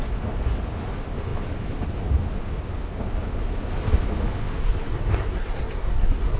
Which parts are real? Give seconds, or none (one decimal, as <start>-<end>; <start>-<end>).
0.0-4.5